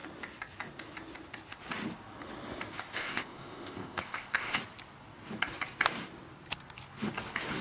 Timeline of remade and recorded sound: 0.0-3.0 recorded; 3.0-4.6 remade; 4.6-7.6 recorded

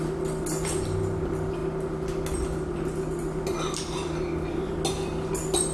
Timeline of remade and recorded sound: 0.0-5.7 recorded